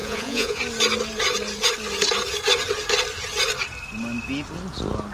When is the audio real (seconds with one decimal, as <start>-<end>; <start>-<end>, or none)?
0.6-5.1